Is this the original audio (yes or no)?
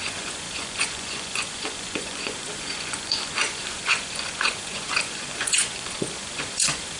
no